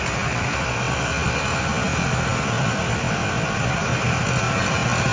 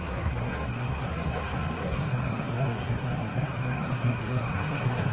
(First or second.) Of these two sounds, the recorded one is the first